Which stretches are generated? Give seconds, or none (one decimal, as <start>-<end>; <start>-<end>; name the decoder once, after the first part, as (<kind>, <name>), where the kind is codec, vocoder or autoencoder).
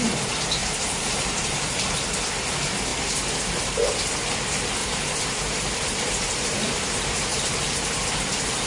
0.6-1.9 (vocoder, BigVGAN v2); 4.8-7.5